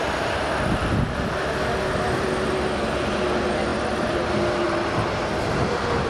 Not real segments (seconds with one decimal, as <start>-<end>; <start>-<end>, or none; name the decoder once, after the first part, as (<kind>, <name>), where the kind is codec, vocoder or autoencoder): 3.7-6.1 (vocoder, BigVGAN v2)